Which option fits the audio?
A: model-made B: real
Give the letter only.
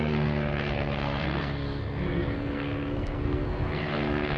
A